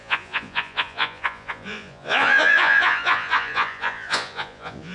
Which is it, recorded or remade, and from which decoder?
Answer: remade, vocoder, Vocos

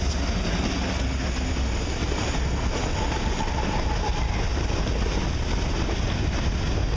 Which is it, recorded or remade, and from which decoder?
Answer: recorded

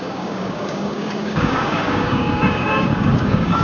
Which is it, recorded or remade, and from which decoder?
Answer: remade, codec, DAC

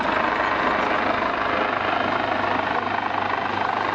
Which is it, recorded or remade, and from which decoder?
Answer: recorded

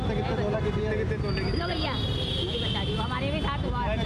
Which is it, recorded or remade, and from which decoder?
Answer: recorded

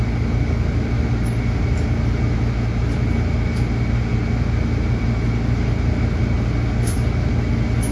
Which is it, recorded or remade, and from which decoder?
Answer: recorded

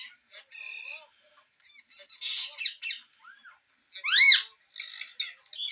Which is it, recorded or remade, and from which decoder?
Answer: recorded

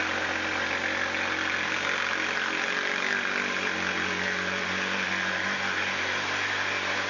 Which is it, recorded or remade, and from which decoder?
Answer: recorded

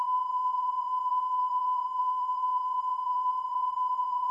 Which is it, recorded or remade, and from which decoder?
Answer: remade, vocoder, Vocos